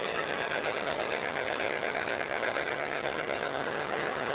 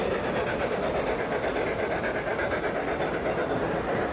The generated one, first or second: first